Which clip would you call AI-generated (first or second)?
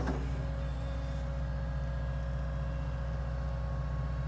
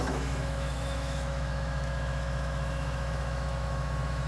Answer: second